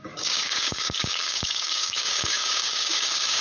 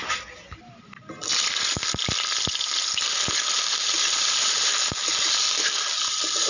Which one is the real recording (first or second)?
second